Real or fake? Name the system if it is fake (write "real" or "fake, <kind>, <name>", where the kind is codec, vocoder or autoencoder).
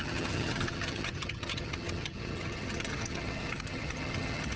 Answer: fake, vocoder, HiFi-GAN